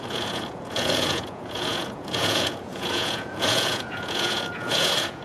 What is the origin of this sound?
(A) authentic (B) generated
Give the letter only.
B